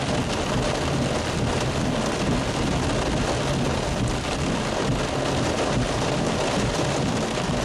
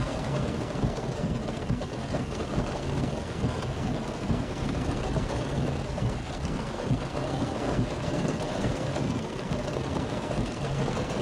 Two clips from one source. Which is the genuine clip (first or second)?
first